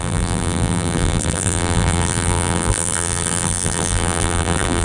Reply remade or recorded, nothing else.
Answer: remade